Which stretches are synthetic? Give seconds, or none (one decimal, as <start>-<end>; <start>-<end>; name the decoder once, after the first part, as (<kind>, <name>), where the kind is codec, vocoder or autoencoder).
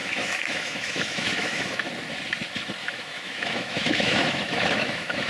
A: 0.0-1.9 (autoencoder, DAC-VAE); 2.8-5.3